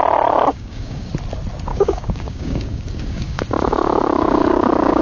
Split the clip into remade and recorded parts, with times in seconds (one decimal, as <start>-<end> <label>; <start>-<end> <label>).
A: 0.0-0.5 recorded; 0.5-1.1 remade; 1.1-1.7 recorded; 1.7-5.0 remade